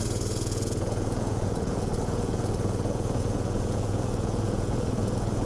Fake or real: fake